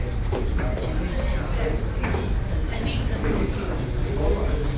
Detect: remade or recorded recorded